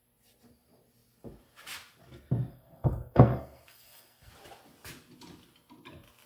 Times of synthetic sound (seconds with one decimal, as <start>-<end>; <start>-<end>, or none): 2.5-4.3